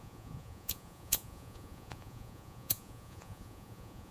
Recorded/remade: remade